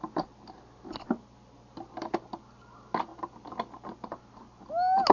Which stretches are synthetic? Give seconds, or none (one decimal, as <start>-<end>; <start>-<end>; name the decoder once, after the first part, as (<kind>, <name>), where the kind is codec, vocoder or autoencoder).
none